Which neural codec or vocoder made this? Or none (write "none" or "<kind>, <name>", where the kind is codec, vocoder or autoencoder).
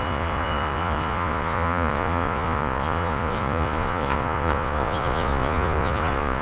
vocoder, Vocos